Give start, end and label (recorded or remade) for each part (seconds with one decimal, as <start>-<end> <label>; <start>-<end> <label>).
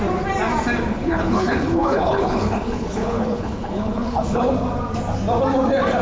0.0-0.9 recorded; 0.9-4.5 remade; 4.5-6.0 recorded